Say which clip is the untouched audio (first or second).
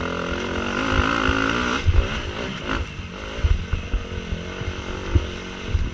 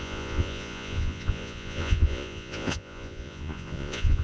first